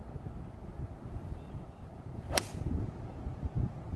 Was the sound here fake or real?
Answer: real